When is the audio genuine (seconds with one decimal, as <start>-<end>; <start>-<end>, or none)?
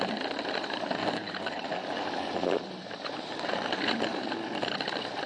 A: 0.0-1.0; 4.2-5.3